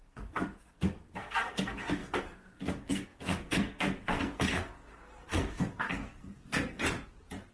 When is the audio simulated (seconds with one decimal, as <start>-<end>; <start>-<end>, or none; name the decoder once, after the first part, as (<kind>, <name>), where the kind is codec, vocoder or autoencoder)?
0.0-6.8 (codec, SNAC)